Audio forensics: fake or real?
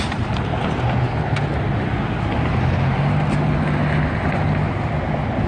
real